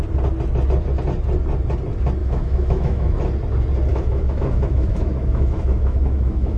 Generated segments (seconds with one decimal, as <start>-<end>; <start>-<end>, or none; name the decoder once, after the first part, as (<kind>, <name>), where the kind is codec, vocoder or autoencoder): 2.2-3.2 (autoencoder, DAC-VAE); 3.9-6.6